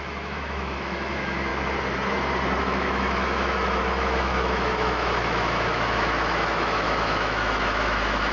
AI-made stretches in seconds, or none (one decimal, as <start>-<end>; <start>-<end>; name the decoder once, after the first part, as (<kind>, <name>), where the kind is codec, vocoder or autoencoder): 0.0-1.5 (autoencoder, DAC-VAE); 2.6-8.3